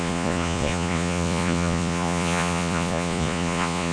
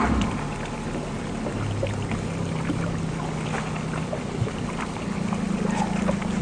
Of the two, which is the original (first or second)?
second